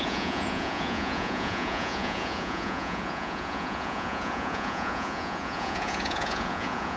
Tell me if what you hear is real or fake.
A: fake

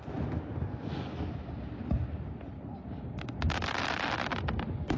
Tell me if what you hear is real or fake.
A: real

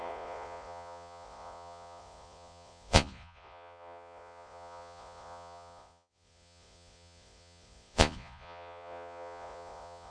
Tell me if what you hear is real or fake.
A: fake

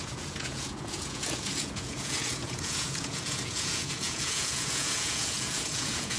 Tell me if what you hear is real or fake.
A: fake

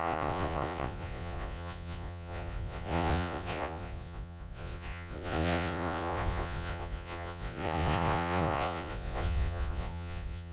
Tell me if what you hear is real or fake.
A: fake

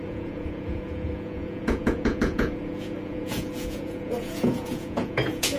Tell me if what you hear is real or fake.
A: fake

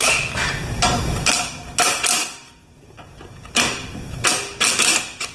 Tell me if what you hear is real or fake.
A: real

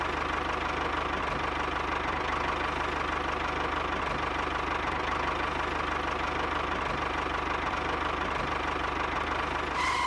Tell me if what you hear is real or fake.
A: real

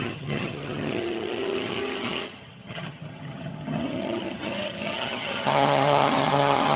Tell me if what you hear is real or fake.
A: fake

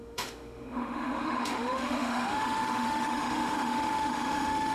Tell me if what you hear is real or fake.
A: fake